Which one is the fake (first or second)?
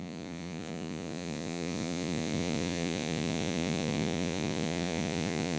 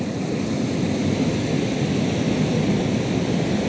first